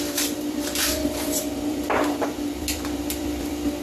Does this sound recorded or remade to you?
remade